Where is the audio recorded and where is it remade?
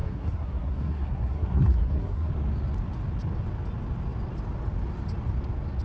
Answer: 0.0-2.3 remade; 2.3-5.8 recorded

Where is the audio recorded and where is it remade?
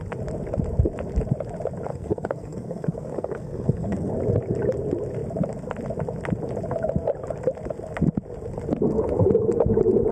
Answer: 0.0-1.9 recorded; 1.9-4.1 remade; 4.1-10.1 recorded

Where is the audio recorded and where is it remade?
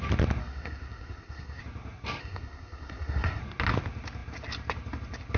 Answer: 0.0-0.4 recorded; 0.4-1.6 remade; 1.6-2.2 recorded; 2.2-3.4 remade; 3.4-5.4 recorded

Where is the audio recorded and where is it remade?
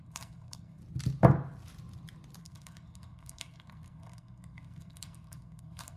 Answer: 0.0-0.8 remade; 0.8-2.4 recorded; 2.4-6.0 remade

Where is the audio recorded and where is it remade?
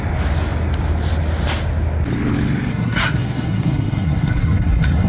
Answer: 0.0-2.7 recorded; 2.7-5.1 remade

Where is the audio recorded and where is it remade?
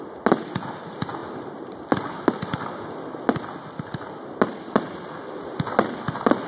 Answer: 0.0-6.5 recorded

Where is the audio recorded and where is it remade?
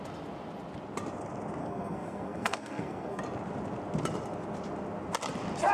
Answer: 0.0-1.6 recorded; 1.6-3.2 remade; 3.2-5.7 recorded